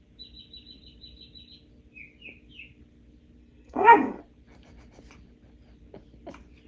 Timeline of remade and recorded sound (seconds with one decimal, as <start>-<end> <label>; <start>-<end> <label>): 0.0-3.4 recorded; 3.4-4.2 remade; 4.2-6.7 recorded